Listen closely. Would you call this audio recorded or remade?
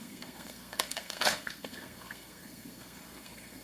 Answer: remade